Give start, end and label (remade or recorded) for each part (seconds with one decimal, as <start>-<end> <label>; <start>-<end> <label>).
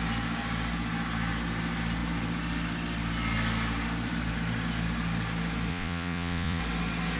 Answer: 0.0-5.7 recorded; 5.7-6.6 remade; 6.6-7.2 recorded